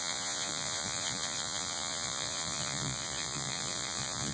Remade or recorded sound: remade